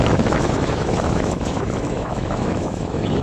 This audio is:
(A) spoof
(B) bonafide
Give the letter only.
A